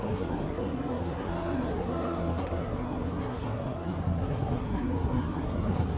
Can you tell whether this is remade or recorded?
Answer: remade